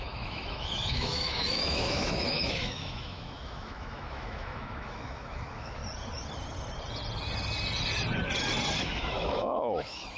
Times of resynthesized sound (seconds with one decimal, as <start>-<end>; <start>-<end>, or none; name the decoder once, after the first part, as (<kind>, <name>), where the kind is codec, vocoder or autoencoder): 0.0-5.8 (autoencoder, DAC-VAE); 8.8-10.2